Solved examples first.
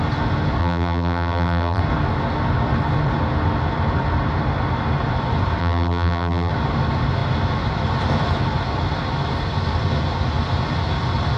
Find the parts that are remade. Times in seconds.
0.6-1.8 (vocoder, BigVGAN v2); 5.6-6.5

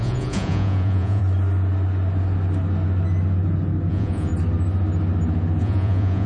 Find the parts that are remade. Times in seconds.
0.0-1.2 (vocoder, Vocos); 3.9-4.3; 5.6-6.3